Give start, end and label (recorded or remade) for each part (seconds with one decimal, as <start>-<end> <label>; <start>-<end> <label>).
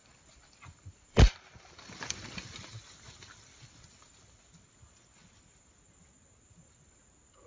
0.0-4.5 remade; 4.5-7.5 recorded